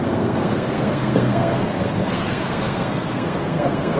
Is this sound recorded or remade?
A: remade